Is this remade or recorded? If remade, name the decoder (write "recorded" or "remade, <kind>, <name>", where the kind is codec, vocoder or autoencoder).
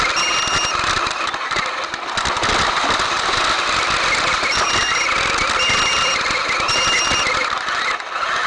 recorded